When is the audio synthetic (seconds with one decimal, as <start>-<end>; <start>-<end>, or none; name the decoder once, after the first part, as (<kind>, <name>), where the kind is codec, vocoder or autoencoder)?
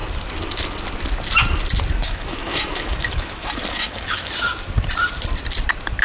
2.0-4.3 (autoencoder, DAC-VAE)